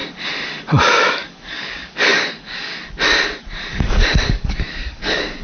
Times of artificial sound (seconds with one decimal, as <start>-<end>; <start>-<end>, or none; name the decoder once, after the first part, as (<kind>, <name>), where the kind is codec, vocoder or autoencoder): 1.0-2.7 (codec, DAC); 3.7-5.4